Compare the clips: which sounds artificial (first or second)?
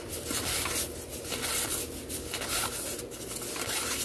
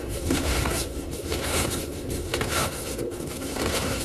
second